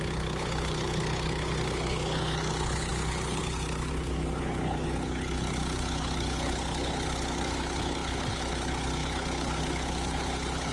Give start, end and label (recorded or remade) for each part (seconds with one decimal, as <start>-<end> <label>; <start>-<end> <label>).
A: 0.0-10.7 remade